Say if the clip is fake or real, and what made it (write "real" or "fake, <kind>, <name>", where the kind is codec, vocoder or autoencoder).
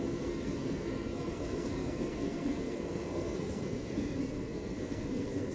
fake, codec, SNAC